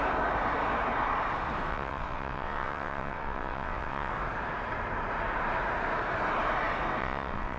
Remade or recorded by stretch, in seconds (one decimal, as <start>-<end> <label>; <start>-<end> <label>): 0.0-1.7 recorded; 1.7-4.1 remade; 4.1-7.0 recorded; 7.0-7.6 remade